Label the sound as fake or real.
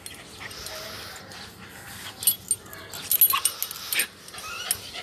real